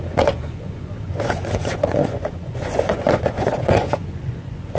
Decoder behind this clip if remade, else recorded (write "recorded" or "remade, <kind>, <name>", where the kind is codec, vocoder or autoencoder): remade, vocoder, Vocos